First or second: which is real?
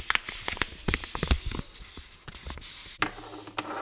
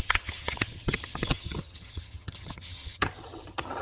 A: first